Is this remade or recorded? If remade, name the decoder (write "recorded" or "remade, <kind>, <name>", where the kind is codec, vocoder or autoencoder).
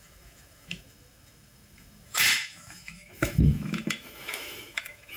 remade, autoencoder, DAC-VAE